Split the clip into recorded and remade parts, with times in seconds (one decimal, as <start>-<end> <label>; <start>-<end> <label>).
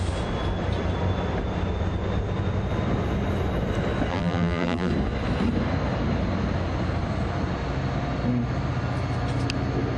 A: 0.0-4.1 recorded; 4.1-4.9 remade; 4.9-10.0 recorded